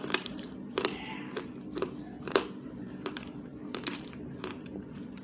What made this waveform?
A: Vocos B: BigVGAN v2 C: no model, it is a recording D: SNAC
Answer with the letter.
B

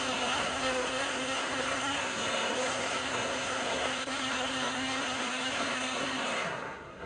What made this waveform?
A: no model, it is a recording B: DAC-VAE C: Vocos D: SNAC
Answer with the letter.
D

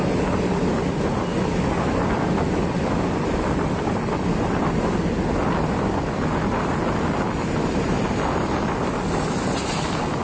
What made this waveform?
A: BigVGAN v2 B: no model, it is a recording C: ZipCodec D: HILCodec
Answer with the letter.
B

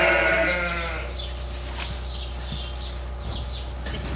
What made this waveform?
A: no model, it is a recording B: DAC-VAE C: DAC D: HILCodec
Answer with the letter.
A